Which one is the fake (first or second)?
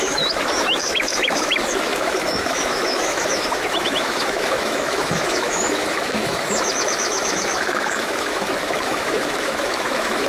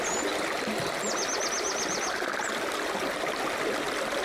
first